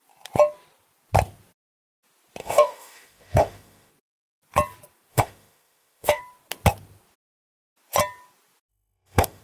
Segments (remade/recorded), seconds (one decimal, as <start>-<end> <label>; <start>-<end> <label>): 0.0-2.4 recorded; 2.4-3.9 remade; 3.9-5.1 recorded; 5.1-6.2 remade; 6.2-8.7 recorded; 8.7-9.4 remade